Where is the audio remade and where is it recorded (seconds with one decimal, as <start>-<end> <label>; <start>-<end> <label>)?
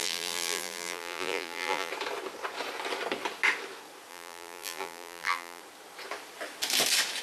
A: 0.0-1.9 remade; 1.9-4.1 recorded; 4.1-5.6 remade; 5.6-7.2 recorded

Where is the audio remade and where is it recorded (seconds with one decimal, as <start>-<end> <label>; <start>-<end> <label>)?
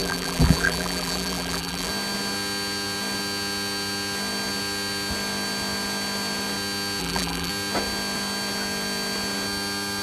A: 0.0-1.9 remade; 1.9-7.0 recorded; 7.0-7.5 remade; 7.5-10.0 recorded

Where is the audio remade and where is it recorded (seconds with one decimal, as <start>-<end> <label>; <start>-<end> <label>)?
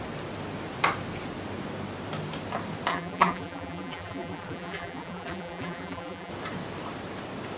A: 0.0-2.9 recorded; 2.9-6.3 remade; 6.3-7.6 recorded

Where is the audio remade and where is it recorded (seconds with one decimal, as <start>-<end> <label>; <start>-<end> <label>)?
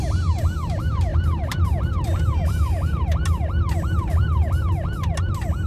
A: 0.0-5.7 recorded